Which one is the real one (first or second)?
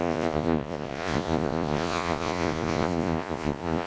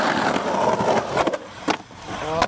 second